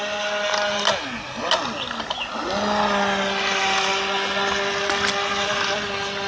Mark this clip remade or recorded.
recorded